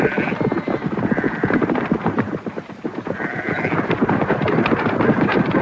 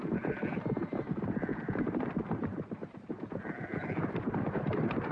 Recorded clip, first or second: first